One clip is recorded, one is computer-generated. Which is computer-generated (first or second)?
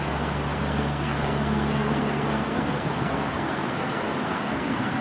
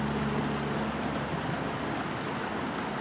first